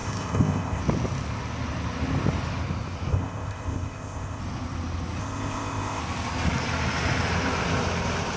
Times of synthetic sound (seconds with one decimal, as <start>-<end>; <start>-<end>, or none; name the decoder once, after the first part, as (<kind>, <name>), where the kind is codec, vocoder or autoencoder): 0.0-0.8 (codec, ZipCodec); 3.1-4.4; 5.2-6.0